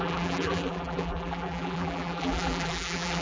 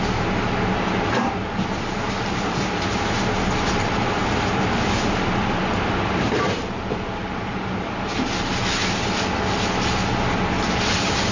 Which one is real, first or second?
second